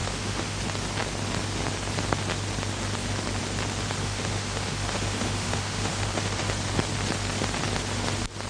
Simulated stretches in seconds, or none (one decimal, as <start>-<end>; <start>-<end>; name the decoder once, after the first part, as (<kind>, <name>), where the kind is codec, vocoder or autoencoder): 0.0-0.6 (autoencoder, DAC-VAE); 4.0-6.5